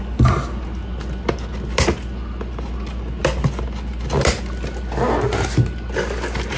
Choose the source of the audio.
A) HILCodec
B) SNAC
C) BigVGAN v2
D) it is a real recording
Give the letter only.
D